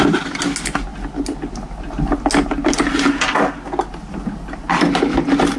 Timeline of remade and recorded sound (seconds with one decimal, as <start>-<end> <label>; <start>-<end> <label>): 0.0-5.6 recorded